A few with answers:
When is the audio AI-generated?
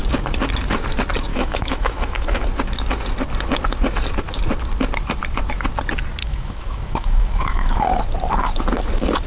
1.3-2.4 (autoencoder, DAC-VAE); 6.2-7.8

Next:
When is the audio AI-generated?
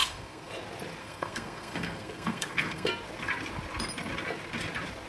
0.0-0.5 (codec, SNAC); 1.0-2.9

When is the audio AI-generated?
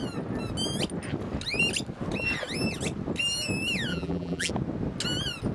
3.9-4.5 (vocoder, BigVGAN v2)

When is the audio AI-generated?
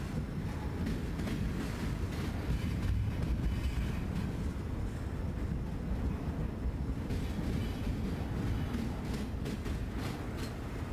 none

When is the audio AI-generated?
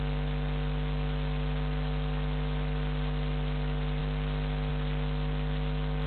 none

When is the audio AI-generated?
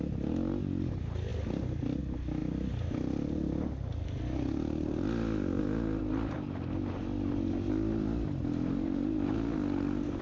none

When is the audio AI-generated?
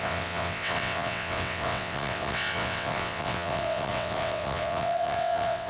0.0-5.7 (vocoder, WaveNeXt)